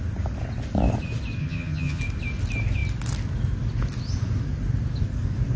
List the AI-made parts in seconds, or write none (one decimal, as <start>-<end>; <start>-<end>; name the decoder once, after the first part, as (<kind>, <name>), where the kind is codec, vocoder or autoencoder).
1.4-2.0 (vocoder, HiFi-GAN)